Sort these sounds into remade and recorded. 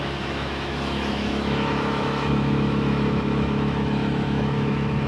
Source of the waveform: remade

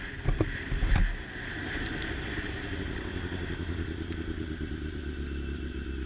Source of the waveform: remade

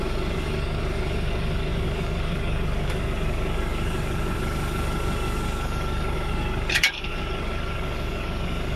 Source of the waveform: remade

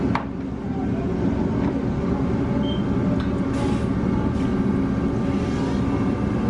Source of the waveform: recorded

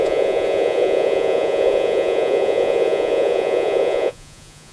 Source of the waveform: remade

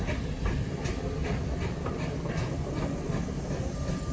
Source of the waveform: recorded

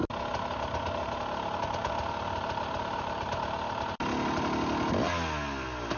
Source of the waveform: recorded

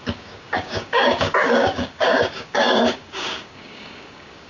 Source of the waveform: remade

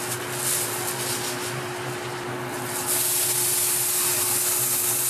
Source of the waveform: recorded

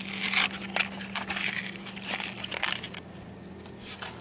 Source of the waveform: recorded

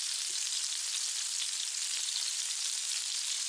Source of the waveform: recorded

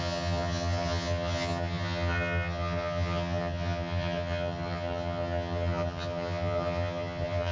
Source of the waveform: remade